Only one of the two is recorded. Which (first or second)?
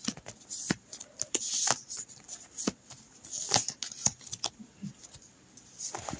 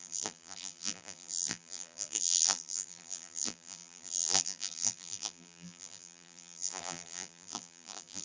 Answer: first